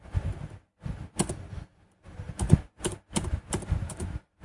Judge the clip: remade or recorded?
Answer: recorded